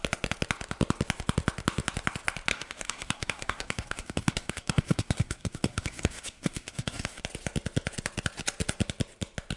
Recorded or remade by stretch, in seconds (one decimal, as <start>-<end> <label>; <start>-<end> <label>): 0.0-2.5 recorded; 2.5-7.2 remade; 7.2-9.6 recorded